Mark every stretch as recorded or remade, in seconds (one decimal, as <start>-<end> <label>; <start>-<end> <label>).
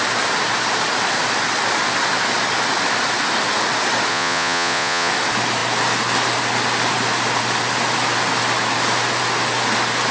0.0-4.1 recorded; 4.1-5.1 remade; 5.1-10.1 recorded